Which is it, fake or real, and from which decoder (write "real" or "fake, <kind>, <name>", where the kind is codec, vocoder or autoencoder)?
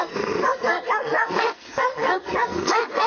fake, codec, SNAC